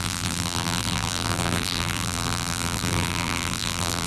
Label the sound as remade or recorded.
remade